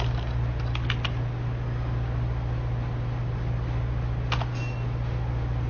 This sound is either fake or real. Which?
real